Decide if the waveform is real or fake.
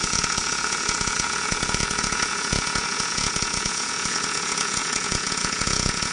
fake